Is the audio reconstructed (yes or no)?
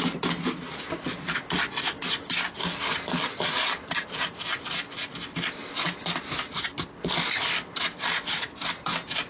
no